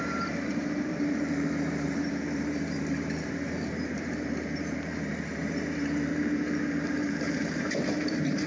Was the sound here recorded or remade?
remade